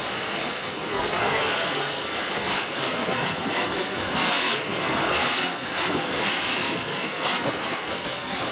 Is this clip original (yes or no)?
no